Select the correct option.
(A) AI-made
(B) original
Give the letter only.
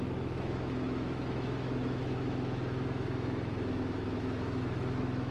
A